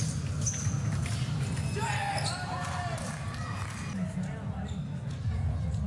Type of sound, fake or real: real